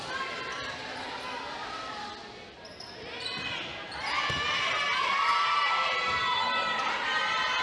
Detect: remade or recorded recorded